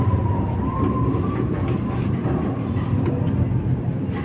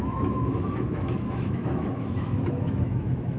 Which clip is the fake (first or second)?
second